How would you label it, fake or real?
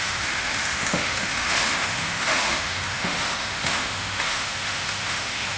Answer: fake